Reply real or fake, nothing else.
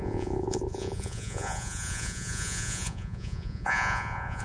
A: fake